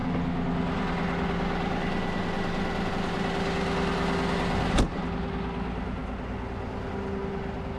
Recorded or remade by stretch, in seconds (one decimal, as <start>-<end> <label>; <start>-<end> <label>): 0.0-7.8 recorded